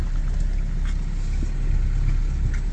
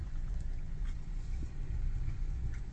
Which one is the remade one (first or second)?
second